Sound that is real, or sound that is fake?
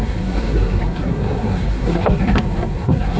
fake